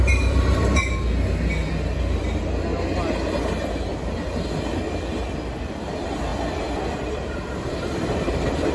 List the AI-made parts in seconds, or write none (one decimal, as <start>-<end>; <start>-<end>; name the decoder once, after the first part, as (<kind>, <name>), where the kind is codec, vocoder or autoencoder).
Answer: 0.0-0.8 (vocoder, BigVGAN v2); 1.7-2.7; 5.6-6.3; 7.6-8.7